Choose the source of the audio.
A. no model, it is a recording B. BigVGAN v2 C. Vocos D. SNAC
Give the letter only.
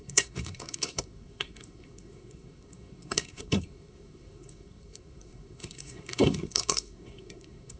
D